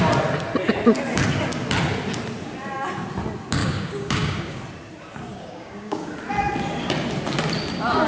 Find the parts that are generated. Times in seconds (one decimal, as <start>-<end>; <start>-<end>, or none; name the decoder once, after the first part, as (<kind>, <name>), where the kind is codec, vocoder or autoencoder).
3.6-4.6 (codec, DAC); 5.3-6.1